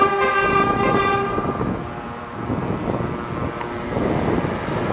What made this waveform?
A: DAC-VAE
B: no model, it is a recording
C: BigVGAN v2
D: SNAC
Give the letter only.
B